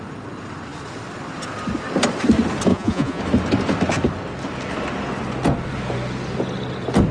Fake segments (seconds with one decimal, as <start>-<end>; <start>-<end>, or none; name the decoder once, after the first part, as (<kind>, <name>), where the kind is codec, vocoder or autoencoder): 2.7-3.2 (vocoder, Vocos)